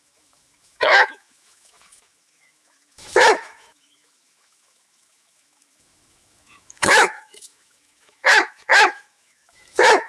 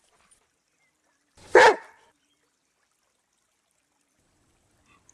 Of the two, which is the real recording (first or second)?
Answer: second